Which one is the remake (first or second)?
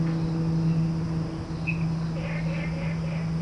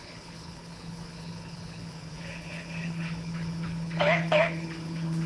second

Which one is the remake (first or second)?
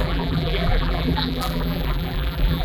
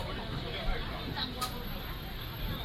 first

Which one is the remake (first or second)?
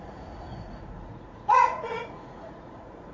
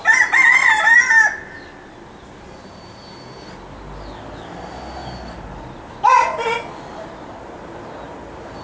first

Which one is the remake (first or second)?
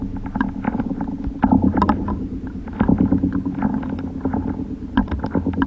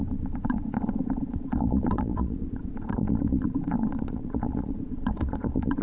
second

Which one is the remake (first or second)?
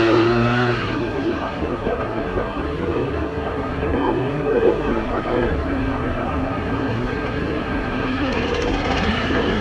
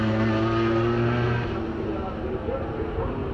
first